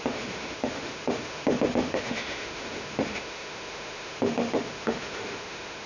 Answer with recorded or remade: remade